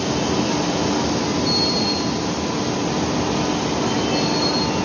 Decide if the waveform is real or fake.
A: real